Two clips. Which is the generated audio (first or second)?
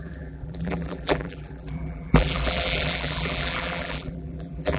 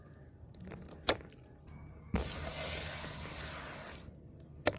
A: first